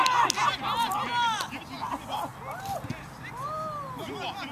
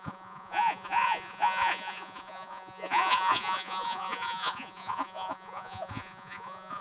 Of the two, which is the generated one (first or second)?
second